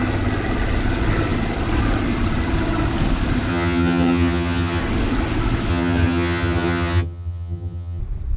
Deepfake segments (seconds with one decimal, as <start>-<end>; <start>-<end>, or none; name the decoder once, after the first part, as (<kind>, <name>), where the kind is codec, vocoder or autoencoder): 3.5-4.8 (vocoder, HiFi-GAN); 5.7-8.0